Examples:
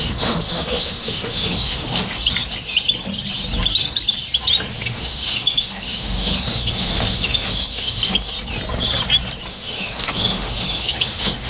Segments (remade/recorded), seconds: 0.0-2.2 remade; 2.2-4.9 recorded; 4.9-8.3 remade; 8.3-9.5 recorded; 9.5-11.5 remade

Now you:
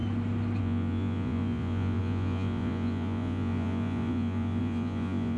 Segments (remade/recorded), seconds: 0.0-0.6 recorded; 0.6-5.4 remade

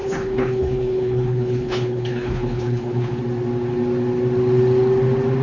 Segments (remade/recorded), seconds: 0.0-3.2 remade; 3.2-5.4 recorded

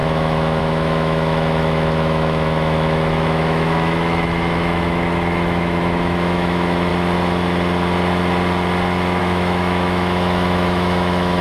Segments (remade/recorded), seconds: 0.0-6.9 remade; 6.9-9.2 recorded; 9.2-11.4 remade

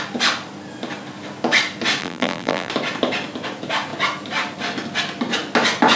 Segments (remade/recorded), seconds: 0.0-2.0 recorded; 2.0-2.7 remade; 2.7-6.0 recorded